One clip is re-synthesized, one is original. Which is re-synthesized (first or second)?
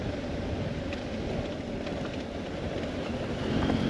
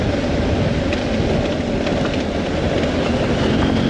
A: first